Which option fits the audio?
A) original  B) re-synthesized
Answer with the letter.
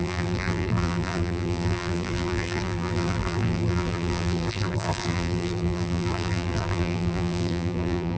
B